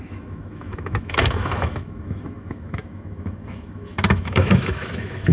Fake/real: fake